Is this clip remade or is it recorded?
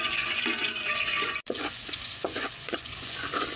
remade